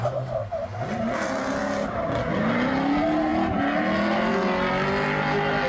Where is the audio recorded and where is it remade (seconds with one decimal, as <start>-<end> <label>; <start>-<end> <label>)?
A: 0.0-5.7 recorded

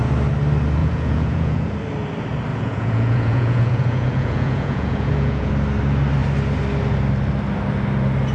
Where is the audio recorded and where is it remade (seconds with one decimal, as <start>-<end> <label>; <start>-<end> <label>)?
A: 0.0-0.8 recorded; 0.8-1.7 remade; 1.7-2.5 recorded; 2.5-5.5 remade; 5.5-8.3 recorded